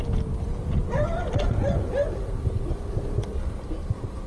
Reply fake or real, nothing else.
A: real